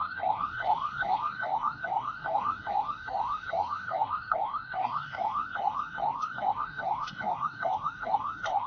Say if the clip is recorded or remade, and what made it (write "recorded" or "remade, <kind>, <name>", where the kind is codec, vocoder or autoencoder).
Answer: remade, codec, SNAC